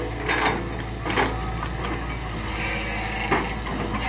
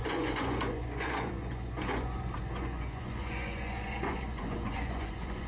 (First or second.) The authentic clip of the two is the first